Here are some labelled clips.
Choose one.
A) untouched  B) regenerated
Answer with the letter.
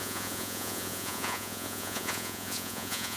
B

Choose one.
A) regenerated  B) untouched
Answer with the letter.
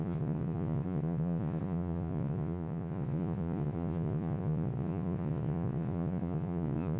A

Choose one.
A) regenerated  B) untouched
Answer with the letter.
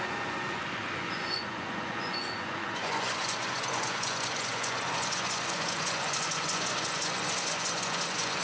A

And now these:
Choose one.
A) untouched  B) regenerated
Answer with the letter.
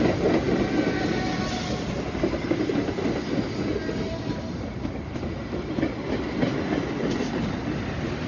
A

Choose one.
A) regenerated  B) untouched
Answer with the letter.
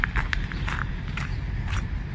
A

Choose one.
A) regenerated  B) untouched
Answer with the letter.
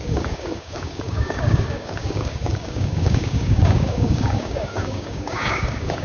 A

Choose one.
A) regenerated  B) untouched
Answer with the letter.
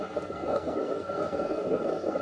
A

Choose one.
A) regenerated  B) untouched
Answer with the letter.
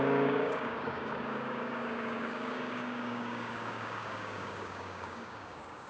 A